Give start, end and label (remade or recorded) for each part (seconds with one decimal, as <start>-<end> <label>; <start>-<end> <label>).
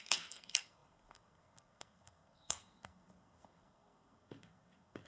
0.0-5.1 remade